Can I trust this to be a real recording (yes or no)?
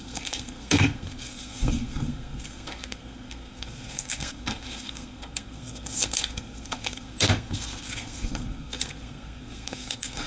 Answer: no